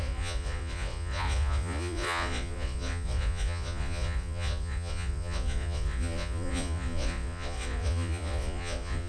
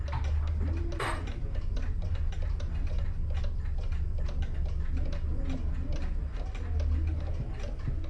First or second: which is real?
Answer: second